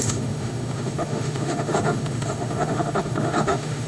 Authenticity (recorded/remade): remade